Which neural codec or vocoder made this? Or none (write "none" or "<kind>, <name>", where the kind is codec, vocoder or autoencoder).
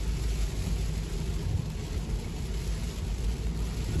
none